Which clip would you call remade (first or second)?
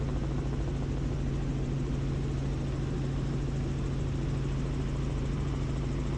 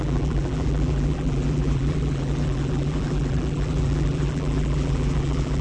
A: second